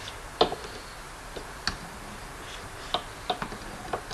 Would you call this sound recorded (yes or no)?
yes